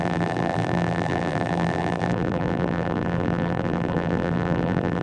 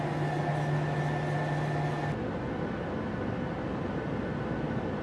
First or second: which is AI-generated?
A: first